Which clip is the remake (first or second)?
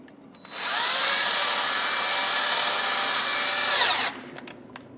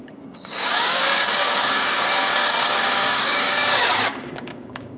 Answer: second